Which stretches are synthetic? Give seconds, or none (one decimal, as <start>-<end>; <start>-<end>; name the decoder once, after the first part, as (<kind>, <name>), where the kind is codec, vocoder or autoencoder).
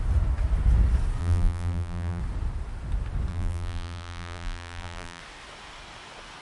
1.2-2.2 (vocoder, BigVGAN v2); 3.3-5.2